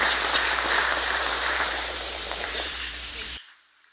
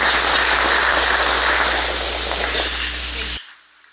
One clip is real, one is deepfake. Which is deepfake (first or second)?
first